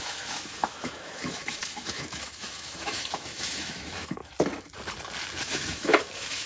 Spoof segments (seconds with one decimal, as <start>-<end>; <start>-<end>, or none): 0.0-4.2; 5.4-6.5